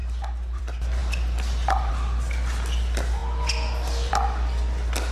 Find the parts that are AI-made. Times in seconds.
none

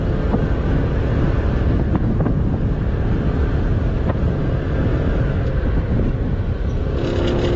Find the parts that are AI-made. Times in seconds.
4.4-5.2 (autoencoder, DAC-VAE)

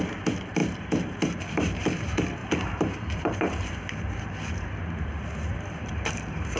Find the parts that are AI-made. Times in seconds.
0.0-6.6 (vocoder, BigVGAN v2)

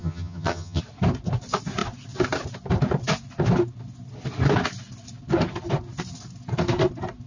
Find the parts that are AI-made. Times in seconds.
0.0-0.8 (vocoder, HiFi-GAN)